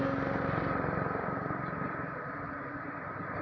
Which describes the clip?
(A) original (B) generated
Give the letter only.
A